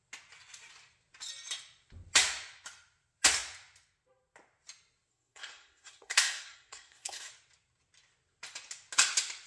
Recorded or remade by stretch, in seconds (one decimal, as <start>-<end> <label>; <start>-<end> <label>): 0.0-5.1 recorded; 5.1-7.3 remade; 7.3-9.5 recorded